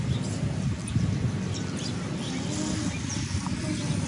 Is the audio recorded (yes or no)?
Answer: yes